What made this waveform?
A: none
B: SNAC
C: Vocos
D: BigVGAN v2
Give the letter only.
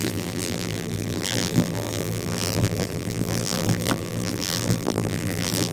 D